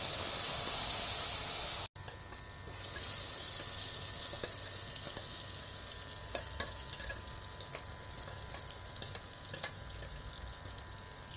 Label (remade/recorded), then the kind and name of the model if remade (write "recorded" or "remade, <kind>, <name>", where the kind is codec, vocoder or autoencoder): recorded